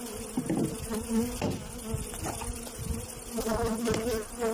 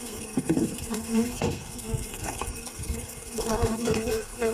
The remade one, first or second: second